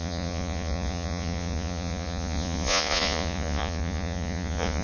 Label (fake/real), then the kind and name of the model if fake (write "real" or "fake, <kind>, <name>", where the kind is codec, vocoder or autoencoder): fake, vocoder, Vocos